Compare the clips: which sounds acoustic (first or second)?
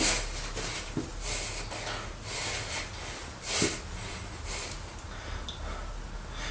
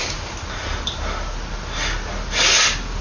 first